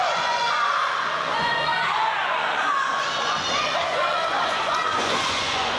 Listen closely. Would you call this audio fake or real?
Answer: fake